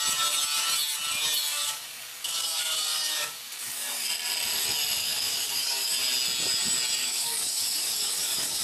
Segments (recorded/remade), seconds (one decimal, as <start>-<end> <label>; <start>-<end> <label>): 0.0-1.5 recorded; 1.5-4.1 remade; 4.1-5.0 recorded; 5.0-5.9 remade; 5.9-7.0 recorded; 7.0-8.6 remade